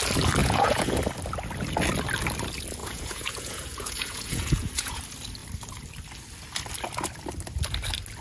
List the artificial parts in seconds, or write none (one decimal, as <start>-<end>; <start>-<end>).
0.4-1.0; 2.8-5.0

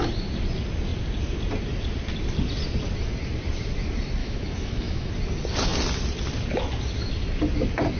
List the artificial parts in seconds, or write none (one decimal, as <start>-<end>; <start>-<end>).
4.2-5.1

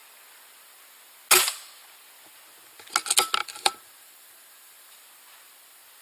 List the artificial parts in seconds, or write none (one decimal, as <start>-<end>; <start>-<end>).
3.4-4.9

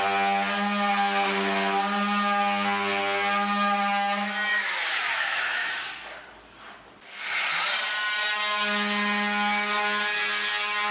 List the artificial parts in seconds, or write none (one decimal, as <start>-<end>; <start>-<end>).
4.5-5.9